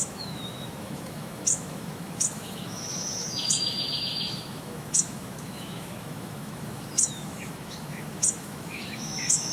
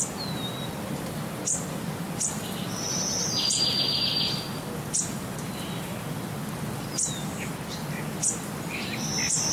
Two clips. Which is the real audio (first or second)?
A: second